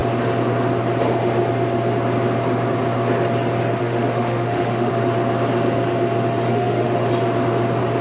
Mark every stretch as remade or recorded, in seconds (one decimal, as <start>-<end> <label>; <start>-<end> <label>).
0.0-3.8 recorded; 3.8-4.9 remade; 4.9-6.5 recorded; 6.5-7.1 remade; 7.1-8.0 recorded

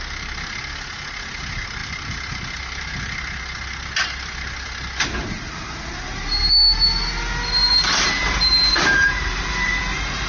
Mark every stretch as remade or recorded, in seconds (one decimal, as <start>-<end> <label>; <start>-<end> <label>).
0.0-7.6 recorded; 7.6-9.8 remade; 9.8-10.3 recorded

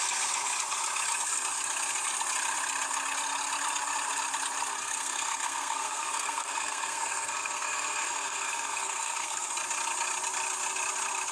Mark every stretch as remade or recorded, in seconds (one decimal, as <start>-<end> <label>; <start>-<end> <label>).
0.0-4.8 recorded; 4.8-9.5 remade; 9.5-11.3 recorded